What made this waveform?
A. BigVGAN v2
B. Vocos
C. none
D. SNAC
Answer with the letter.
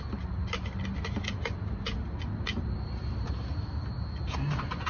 C